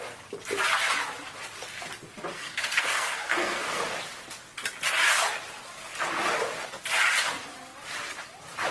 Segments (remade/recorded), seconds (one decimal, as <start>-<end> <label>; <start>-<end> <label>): 0.0-2.3 recorded; 2.3-3.8 remade; 3.8-8.7 recorded